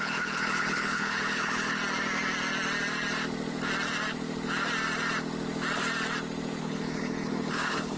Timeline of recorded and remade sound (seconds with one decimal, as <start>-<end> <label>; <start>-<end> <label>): 0.0-1.8 remade; 1.8-6.6 recorded; 6.6-8.0 remade